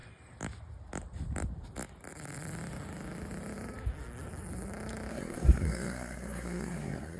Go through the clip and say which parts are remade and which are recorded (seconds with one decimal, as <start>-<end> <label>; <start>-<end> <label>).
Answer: 0.0-5.1 recorded; 5.1-7.2 remade